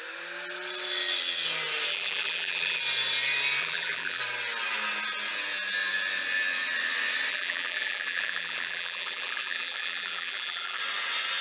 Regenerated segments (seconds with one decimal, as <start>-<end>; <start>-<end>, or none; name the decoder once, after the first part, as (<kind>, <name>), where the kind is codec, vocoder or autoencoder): 1.9-2.8 (vocoder, BigVGAN v2); 3.6-4.2; 7.3-10.8